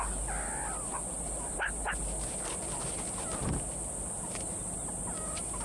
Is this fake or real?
real